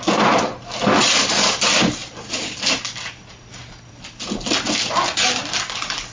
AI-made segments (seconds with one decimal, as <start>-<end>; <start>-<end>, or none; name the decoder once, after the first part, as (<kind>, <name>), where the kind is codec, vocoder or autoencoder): none